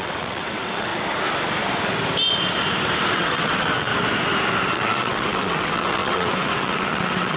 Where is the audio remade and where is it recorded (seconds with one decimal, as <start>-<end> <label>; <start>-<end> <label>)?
0.0-0.9 remade; 0.9-3.1 recorded; 3.1-3.9 remade; 3.9-4.7 recorded; 4.7-7.4 remade